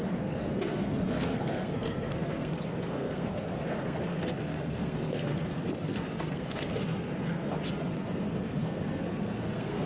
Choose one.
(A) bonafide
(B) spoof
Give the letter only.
B